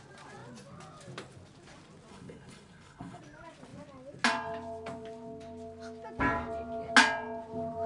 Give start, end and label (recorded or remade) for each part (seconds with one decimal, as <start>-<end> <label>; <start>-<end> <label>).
0.0-2.1 recorded; 2.1-3.2 remade; 3.2-7.9 recorded